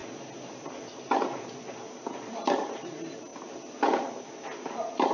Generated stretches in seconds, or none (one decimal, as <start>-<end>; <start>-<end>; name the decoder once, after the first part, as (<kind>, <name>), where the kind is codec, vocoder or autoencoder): none